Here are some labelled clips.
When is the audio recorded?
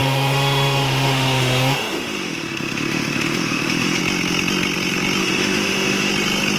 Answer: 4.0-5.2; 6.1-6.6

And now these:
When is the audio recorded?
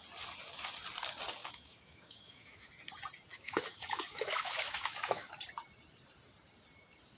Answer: 0.0-1.4; 2.7-3.3; 5.3-7.2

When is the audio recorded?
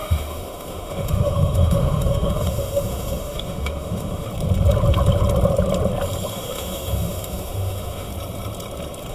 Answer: 4.3-6.3; 8.1-9.1